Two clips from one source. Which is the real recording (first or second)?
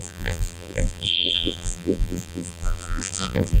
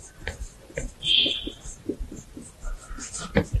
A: second